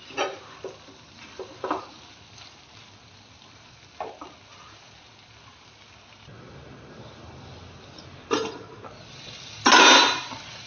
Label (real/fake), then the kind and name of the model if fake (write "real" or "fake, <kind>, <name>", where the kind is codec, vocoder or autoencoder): real